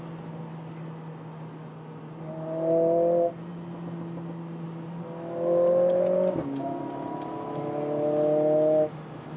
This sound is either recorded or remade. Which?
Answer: recorded